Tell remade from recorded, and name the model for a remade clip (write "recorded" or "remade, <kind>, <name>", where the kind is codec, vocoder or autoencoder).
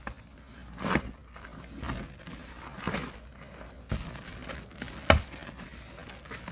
recorded